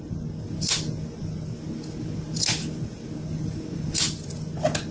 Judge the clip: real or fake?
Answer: real